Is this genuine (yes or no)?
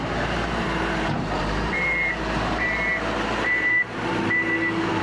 no